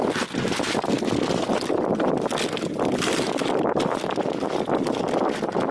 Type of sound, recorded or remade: recorded